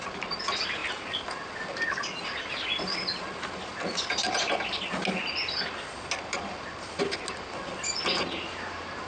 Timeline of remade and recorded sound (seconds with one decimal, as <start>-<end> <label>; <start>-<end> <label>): 0.0-9.1 recorded